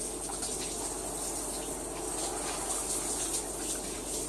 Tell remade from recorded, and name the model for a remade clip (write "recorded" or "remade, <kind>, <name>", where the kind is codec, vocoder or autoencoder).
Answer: recorded